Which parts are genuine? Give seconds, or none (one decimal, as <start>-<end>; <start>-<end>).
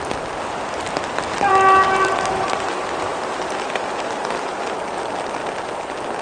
0.0-6.2